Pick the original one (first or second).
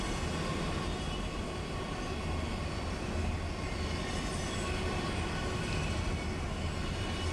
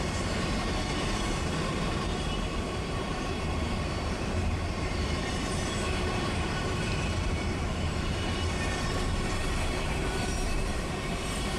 first